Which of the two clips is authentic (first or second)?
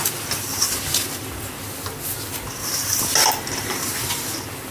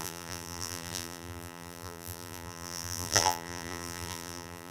first